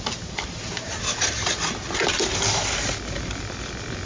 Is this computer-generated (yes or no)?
no